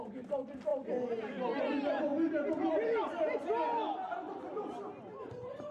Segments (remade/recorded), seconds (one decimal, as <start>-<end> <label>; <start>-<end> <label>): 0.0-4.5 recorded; 4.5-5.3 remade; 5.3-5.7 recorded